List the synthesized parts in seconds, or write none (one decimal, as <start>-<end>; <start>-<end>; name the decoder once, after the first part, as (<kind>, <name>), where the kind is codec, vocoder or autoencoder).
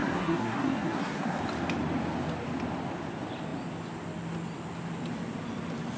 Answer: 0.0-1.4 (codec, SNAC)